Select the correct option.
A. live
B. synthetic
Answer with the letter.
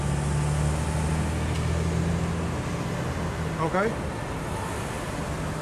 A